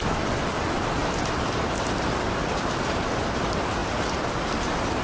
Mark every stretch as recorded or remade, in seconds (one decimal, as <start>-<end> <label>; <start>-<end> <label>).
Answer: 0.0-5.0 recorded